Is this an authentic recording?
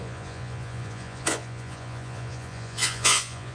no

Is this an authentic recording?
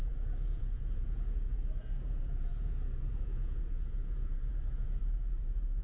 no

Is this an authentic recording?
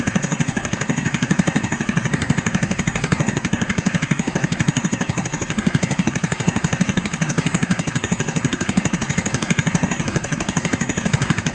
no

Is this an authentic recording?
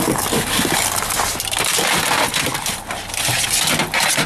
yes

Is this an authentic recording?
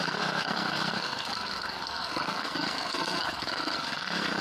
no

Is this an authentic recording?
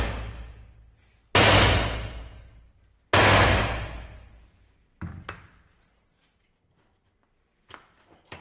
yes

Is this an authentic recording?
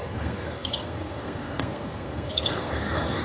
no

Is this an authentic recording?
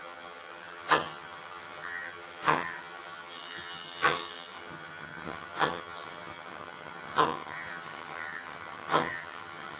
no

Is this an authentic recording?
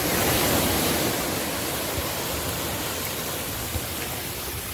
yes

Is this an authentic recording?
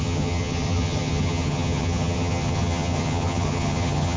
no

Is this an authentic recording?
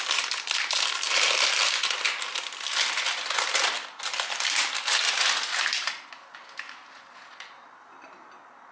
yes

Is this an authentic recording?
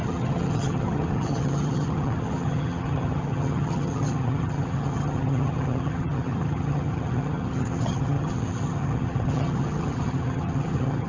no